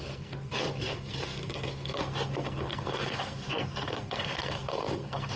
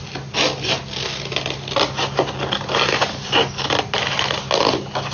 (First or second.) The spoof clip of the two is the first